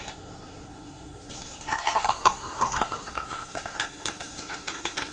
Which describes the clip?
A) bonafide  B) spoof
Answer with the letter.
B